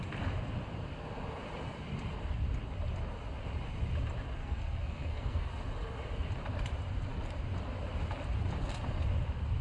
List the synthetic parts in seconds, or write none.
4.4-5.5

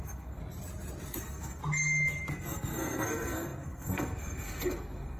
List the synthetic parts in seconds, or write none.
0.0-0.4; 1.2-1.6; 2.3-5.2

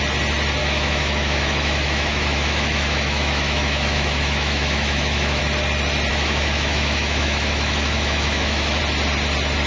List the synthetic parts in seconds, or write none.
0.6-5.4; 6.1-8.8